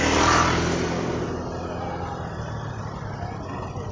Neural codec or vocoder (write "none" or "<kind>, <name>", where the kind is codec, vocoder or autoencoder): none